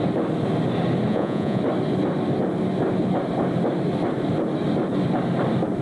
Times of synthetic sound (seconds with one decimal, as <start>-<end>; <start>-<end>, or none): 1.1-1.6